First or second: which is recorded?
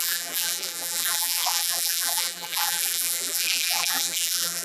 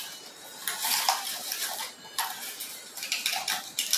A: second